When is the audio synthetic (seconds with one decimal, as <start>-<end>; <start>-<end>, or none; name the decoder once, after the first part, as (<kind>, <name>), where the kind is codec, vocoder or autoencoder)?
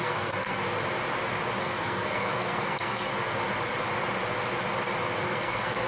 0.0-0.6 (codec, SNAC); 1.6-3.1; 5.2-5.9